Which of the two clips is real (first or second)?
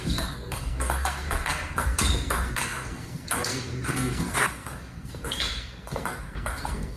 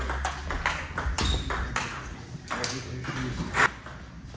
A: second